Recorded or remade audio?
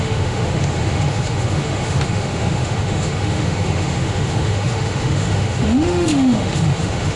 remade